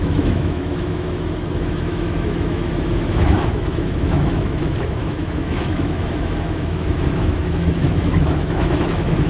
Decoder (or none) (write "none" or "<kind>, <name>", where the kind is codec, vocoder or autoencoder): autoencoder, DAC-VAE